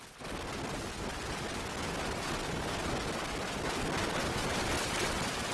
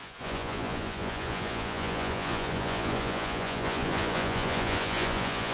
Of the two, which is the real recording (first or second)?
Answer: first